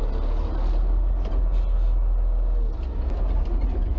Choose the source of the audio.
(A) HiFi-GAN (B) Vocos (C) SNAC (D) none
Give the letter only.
D